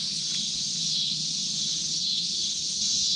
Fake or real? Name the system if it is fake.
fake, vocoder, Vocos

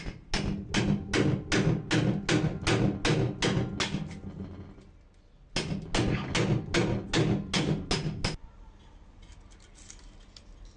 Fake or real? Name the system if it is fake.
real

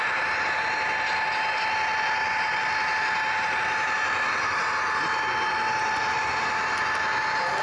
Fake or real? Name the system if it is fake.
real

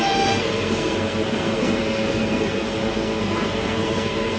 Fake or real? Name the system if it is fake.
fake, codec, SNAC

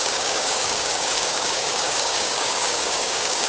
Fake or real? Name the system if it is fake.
fake, codec, DAC